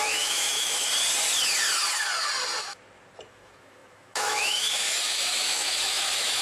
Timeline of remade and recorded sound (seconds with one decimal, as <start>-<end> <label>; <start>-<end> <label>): 0.0-0.9 remade; 0.9-3.3 recorded; 3.3-6.4 remade